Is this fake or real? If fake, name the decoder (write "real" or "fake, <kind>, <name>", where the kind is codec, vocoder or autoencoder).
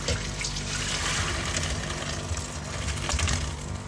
real